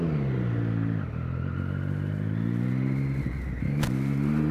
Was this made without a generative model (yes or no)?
yes